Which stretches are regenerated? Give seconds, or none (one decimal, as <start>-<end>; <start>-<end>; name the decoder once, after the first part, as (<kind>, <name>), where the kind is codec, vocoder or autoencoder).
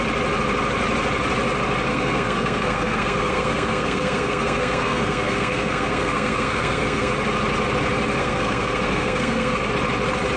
1.9-7.1 (codec, SNAC); 8.2-9.7